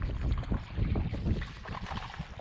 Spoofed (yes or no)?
no